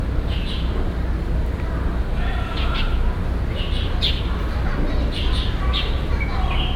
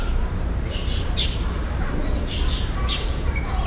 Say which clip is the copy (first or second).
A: second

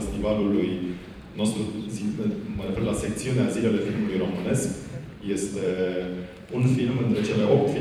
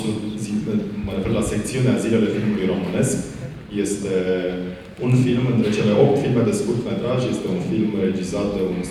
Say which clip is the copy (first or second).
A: first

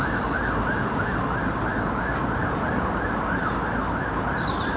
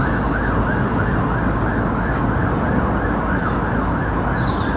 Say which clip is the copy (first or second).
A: first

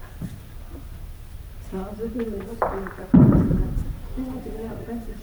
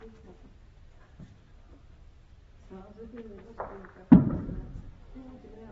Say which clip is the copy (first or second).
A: first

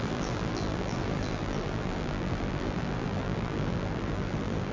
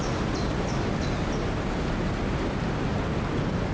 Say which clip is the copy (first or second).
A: first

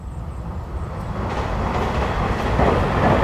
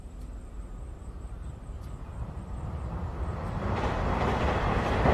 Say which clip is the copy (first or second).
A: second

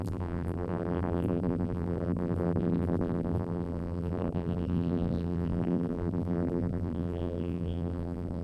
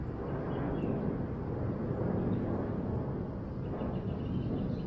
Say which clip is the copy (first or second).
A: first